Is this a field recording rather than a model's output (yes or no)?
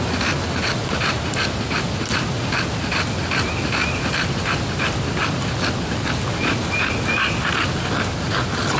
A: yes